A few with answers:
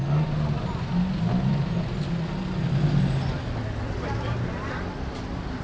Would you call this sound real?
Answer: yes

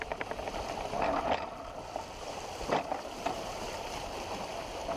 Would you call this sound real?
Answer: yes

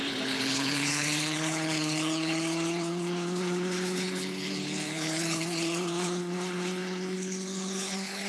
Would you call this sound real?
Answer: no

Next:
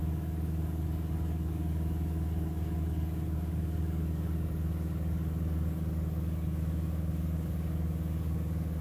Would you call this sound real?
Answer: no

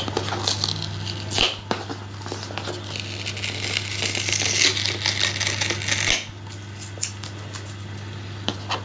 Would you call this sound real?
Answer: yes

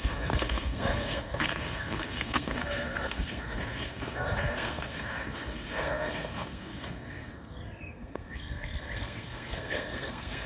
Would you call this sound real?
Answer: no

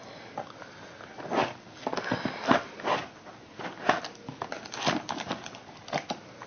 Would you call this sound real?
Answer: yes